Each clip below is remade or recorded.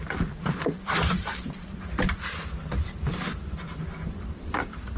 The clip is recorded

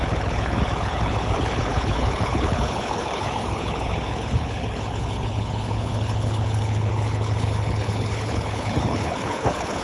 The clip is remade